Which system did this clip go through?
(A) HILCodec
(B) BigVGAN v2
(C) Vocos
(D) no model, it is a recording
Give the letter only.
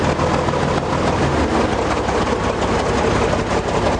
D